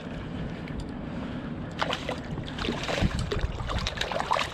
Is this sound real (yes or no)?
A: no